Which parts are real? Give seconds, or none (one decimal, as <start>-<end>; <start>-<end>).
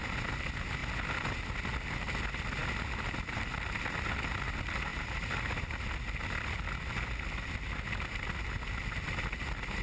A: 0.0-4.9; 5.5-9.8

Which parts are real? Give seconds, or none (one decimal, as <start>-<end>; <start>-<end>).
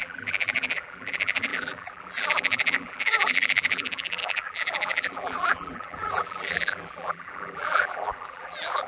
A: none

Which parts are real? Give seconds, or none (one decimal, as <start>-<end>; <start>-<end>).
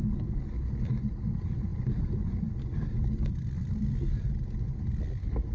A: 0.0-5.5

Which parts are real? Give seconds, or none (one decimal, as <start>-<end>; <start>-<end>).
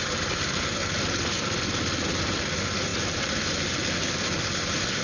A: 0.8-2.1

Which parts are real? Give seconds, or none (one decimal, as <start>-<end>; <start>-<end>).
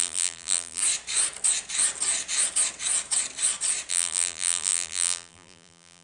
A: 0.8-3.9